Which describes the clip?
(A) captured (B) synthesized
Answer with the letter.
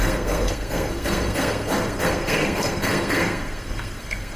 B